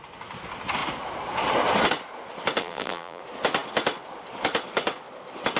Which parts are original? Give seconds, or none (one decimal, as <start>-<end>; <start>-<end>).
0.0-2.6; 3.2-5.6